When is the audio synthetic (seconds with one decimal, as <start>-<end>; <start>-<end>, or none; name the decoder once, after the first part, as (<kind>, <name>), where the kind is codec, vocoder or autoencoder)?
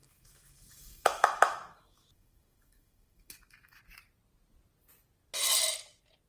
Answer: 0.0-3.8 (autoencoder, DAC-VAE)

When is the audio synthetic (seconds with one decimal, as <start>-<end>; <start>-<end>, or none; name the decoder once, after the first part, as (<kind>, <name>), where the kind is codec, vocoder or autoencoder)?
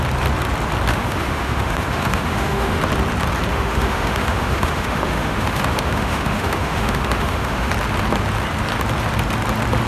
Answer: 0.9-2.8 (autoencoder, DAC-VAE); 3.5-7.7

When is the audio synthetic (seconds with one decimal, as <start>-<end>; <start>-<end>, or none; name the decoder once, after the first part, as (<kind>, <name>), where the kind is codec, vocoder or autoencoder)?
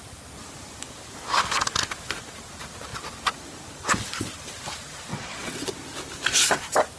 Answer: 5.1-5.7 (vocoder, WaveNeXt)